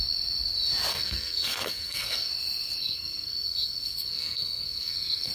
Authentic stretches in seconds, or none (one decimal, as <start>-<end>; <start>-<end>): 0.0-0.9; 2.3-2.8